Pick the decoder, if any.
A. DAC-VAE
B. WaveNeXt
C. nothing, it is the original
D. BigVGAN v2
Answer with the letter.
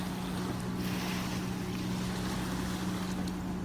C